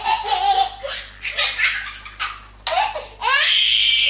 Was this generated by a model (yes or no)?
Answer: no